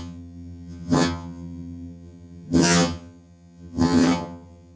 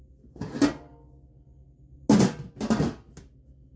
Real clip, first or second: second